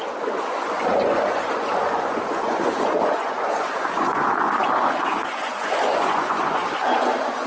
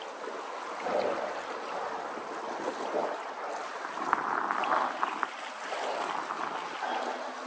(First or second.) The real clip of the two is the second